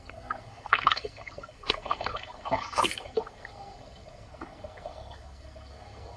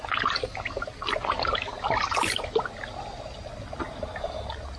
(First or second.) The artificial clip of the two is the first